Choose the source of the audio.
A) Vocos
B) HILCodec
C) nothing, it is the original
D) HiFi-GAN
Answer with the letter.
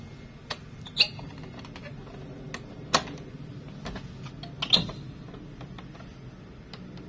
C